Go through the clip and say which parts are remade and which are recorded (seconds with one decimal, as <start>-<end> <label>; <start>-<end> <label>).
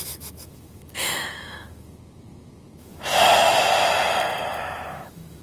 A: 0.0-3.1 remade; 3.1-4.6 recorded; 4.6-5.4 remade